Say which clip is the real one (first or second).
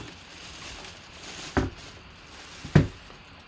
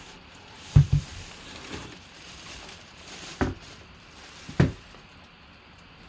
first